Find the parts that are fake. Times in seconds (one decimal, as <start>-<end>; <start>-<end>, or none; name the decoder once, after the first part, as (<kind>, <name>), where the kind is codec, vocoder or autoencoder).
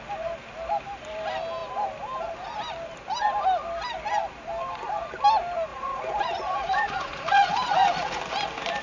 5.7-8.2 (vocoder, Vocos)